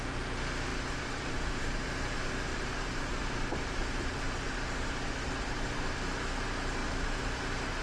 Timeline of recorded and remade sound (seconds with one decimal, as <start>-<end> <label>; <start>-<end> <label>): 0.0-0.7 recorded; 0.7-1.9 remade; 1.9-2.5 recorded; 2.5-6.0 remade; 6.0-7.8 recorded